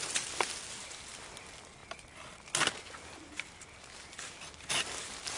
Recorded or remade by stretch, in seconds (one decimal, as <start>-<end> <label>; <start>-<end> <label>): 0.0-5.4 recorded

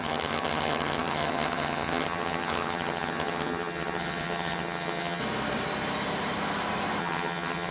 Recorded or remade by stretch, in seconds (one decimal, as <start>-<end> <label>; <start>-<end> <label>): 0.0-5.2 remade; 5.2-7.0 recorded; 7.0-7.7 remade

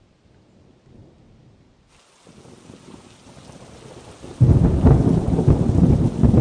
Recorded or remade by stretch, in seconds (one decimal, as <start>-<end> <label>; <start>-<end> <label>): 0.0-6.4 recorded

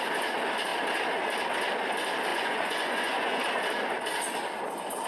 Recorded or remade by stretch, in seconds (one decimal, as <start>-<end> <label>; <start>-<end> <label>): 0.0-2.3 recorded; 2.3-3.4 remade; 3.4-5.1 recorded

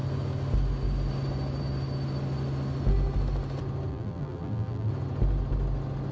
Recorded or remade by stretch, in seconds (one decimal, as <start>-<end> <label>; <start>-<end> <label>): 0.0-3.9 recorded; 3.9-4.9 remade; 4.9-6.1 recorded

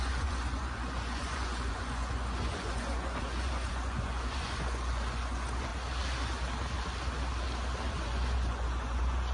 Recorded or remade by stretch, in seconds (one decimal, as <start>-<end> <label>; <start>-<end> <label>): 0.0-5.7 remade; 5.7-7.9 recorded; 7.9-9.3 remade

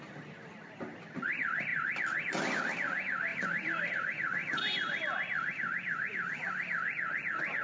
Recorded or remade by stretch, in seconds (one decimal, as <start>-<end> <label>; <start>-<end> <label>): 0.0-3.3 recorded; 3.3-3.9 remade; 3.9-4.4 recorded; 4.4-5.0 remade; 5.0-7.6 recorded